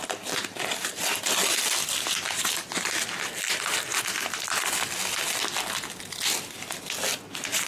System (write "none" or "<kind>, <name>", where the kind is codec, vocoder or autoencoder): none